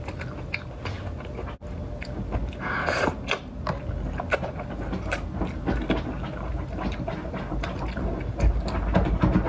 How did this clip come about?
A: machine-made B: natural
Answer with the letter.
B